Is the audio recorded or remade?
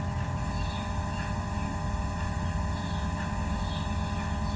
recorded